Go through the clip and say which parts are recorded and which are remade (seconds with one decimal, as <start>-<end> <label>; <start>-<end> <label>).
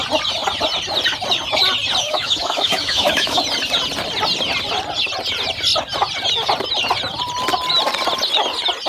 0.0-2.0 recorded; 2.0-3.4 remade; 3.4-8.9 recorded